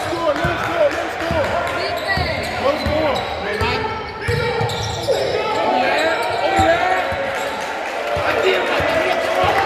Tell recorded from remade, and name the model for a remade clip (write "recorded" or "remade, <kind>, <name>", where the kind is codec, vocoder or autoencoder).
recorded